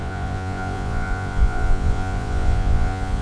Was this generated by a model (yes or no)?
yes